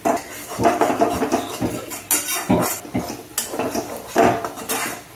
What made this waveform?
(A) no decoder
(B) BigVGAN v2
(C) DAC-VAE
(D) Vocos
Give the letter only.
A